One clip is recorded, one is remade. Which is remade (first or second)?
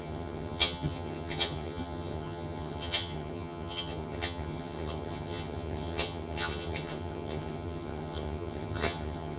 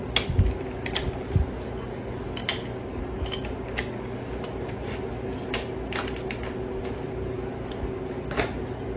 first